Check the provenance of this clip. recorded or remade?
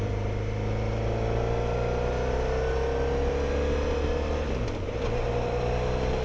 recorded